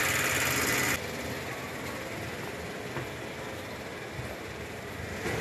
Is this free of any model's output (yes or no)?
yes